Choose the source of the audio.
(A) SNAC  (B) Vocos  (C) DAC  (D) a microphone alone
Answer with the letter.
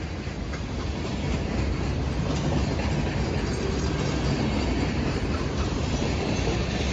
D